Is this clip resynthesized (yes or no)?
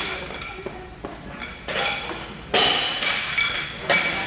no